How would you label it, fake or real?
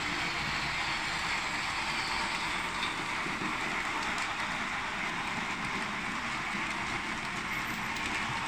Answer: real